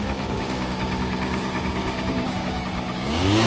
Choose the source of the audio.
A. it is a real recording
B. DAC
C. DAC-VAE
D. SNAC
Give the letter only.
B